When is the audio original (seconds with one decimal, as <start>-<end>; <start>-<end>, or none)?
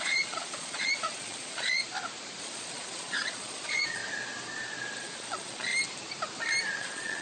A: 1.8-2.4; 4.0-5.0; 5.7-6.8